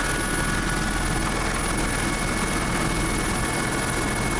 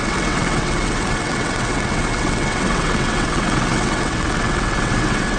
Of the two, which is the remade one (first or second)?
second